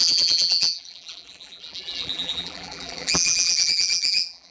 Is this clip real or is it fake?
fake